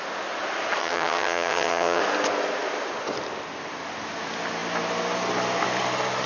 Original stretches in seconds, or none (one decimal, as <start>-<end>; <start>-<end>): 0.0-0.8; 2.0-6.3